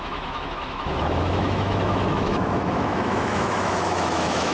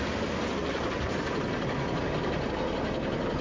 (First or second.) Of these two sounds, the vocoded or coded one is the first